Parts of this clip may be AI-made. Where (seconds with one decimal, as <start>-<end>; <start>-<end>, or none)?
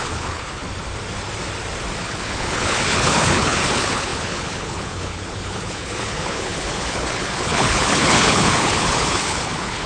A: 0.0-0.6; 2.0-9.9